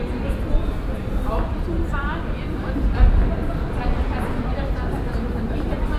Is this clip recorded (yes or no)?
yes